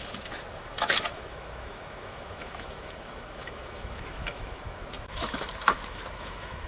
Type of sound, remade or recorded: remade